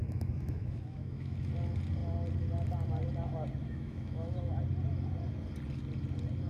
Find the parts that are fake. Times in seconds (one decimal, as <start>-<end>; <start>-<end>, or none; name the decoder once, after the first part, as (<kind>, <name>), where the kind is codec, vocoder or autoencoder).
0.0-1.5 (autoencoder, DAC-VAE); 3.6-4.5